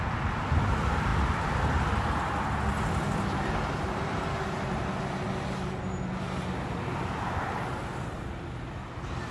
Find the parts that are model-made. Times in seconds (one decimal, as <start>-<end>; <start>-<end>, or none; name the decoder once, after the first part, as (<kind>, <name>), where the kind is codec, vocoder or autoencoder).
none